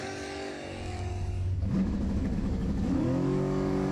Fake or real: fake